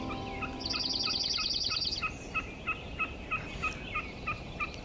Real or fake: real